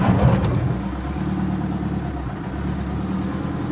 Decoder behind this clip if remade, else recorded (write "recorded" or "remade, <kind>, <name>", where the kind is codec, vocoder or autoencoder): recorded